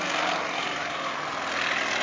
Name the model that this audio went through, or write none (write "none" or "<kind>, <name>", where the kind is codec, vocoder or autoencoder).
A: none